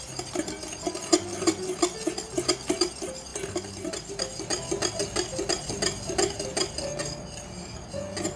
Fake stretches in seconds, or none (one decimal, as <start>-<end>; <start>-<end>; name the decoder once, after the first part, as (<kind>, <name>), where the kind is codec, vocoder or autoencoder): 3.3-4.1 (vocoder, BigVGAN v2)